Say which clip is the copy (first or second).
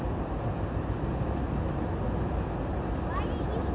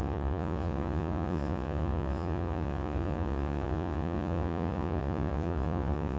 second